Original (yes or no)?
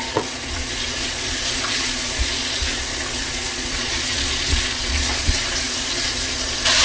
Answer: no